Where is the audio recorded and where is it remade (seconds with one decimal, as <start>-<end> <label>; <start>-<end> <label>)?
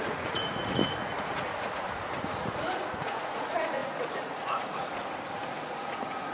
0.0-6.3 remade